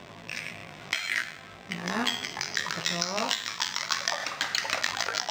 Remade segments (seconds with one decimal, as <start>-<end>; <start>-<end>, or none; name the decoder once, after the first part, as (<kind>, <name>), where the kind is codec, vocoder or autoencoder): 0.0-4.2 (vocoder, BigVGAN v2); 4.8-5.3